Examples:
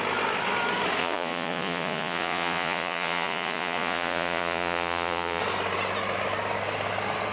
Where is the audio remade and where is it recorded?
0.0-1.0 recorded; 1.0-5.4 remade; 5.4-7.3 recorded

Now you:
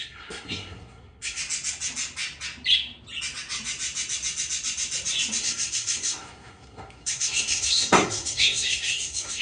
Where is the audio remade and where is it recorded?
0.0-1.4 remade; 1.4-5.4 recorded; 5.4-9.4 remade

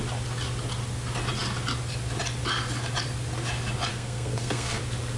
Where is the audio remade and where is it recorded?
0.0-3.9 recorded; 3.9-4.8 remade; 4.8-5.2 recorded